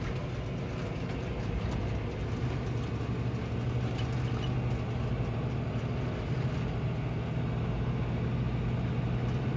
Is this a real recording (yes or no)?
yes